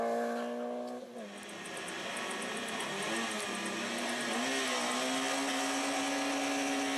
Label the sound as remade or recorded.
recorded